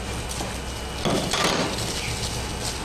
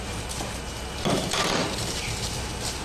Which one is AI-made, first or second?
second